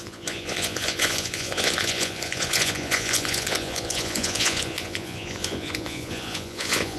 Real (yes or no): no